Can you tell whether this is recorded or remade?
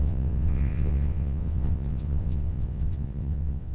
remade